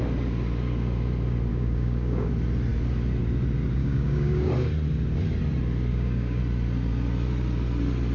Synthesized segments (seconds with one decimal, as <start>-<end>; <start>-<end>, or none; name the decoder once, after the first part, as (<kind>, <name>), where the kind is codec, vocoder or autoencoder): 1.5-2.3 (codec, DAC); 3.8-4.5; 5.9-6.4